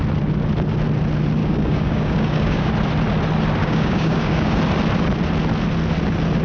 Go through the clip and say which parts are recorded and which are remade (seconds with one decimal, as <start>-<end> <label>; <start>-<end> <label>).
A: 0.0-1.4 recorded; 1.4-2.7 remade; 2.7-3.6 recorded; 3.6-4.6 remade; 4.6-6.4 recorded

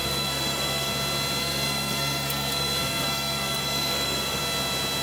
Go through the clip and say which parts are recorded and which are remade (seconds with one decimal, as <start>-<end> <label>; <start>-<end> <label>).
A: 0.0-0.9 remade; 0.9-1.4 recorded; 1.4-4.4 remade; 4.4-5.0 recorded

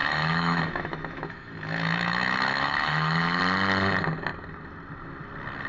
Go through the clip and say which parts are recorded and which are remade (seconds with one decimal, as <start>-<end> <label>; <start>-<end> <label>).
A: 0.0-3.4 remade; 3.4-5.7 recorded

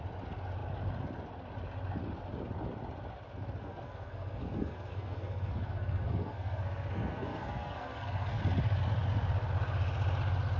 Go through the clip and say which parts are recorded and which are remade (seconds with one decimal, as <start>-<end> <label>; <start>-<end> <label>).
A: 0.0-3.6 recorded; 3.6-8.4 remade; 8.4-10.6 recorded

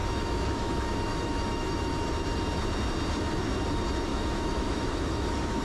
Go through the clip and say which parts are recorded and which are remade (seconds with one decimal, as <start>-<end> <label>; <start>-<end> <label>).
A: 0.0-1.9 remade; 1.9-4.1 recorded; 4.1-5.6 remade

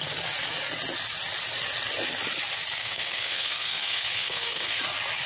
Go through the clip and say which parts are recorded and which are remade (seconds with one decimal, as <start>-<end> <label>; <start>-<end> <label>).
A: 0.0-2.8 recorded; 2.8-4.8 remade; 4.8-5.3 recorded